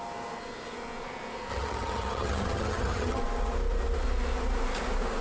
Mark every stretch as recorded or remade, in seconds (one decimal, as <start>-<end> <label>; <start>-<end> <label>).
0.0-1.5 recorded; 1.5-3.2 remade; 3.2-5.2 recorded

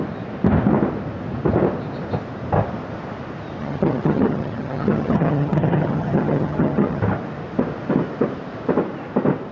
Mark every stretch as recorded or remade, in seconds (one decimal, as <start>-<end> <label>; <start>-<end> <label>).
0.0-3.6 recorded; 3.6-7.0 remade; 7.0-9.5 recorded

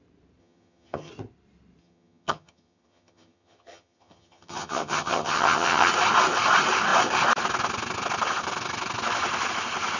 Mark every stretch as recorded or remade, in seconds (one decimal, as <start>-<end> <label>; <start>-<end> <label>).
0.0-0.4 recorded; 0.4-1.1 remade; 1.1-1.8 recorded; 1.8-5.9 remade; 5.9-10.0 recorded